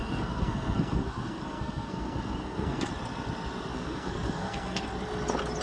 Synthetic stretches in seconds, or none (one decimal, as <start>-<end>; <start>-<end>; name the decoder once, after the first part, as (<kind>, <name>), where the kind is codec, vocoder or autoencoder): 0.0-2.9 (codec, SNAC); 3.7-4.8